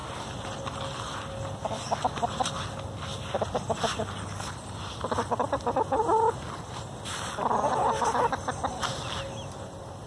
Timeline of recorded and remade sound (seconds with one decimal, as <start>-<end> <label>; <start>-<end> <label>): 0.0-2.5 remade; 2.5-3.1 recorded; 3.1-4.8 remade; 4.8-10.1 recorded